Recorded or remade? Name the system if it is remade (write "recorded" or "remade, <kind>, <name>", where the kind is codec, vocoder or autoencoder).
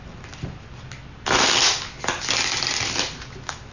recorded